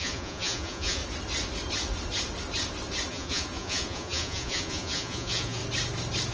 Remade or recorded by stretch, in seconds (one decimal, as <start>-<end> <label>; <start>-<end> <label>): 0.0-1.0 remade; 1.0-3.1 recorded; 3.1-5.6 remade; 5.6-6.3 recorded